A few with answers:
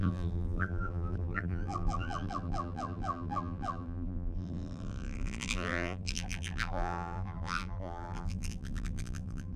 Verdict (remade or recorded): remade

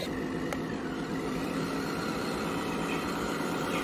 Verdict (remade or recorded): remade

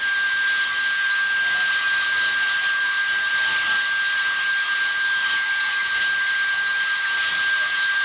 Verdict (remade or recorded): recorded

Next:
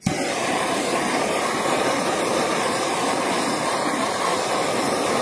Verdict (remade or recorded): remade